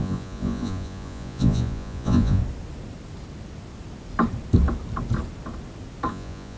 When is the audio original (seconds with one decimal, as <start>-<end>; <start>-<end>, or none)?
2.4-6.1